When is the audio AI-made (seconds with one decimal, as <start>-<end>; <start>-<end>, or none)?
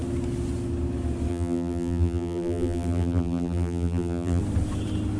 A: 1.3-4.4